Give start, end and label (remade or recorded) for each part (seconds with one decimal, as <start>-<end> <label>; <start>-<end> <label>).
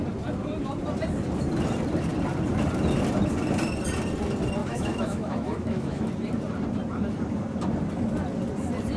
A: 0.0-4.6 recorded; 4.6-6.1 remade; 6.1-9.0 recorded